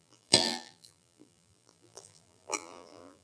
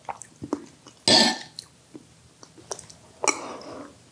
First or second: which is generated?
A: first